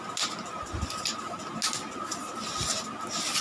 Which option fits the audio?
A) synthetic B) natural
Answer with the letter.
B